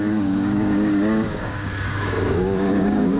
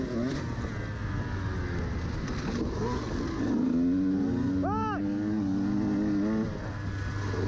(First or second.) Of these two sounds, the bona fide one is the second